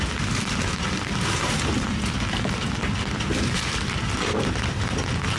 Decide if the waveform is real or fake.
real